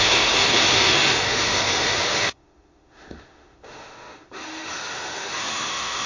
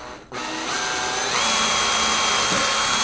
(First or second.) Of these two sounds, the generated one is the first